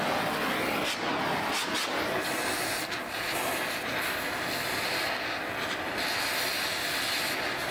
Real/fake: real